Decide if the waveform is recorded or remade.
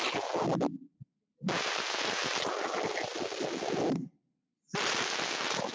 recorded